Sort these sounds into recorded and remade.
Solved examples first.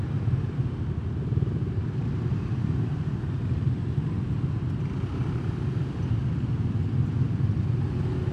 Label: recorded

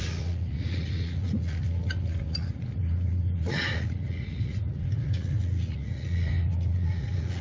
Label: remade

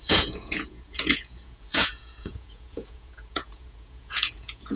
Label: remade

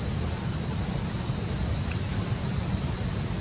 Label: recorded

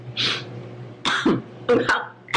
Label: recorded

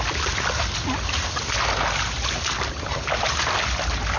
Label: recorded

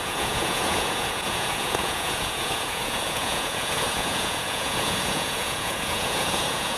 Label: remade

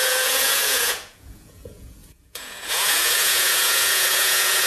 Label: remade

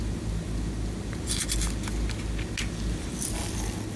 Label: recorded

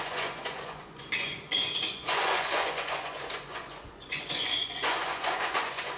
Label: remade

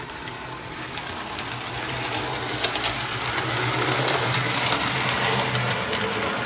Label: recorded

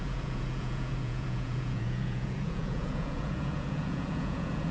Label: remade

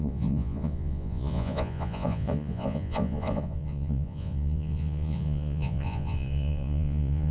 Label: remade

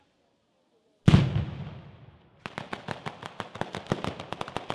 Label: recorded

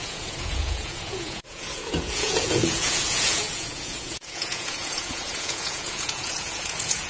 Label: remade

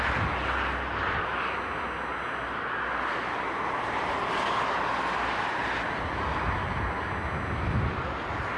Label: recorded